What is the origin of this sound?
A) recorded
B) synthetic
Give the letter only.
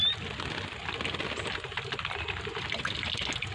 A